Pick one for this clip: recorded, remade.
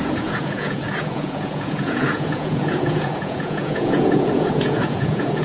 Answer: remade